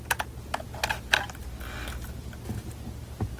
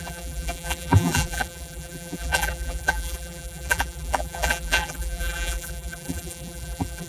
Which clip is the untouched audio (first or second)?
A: first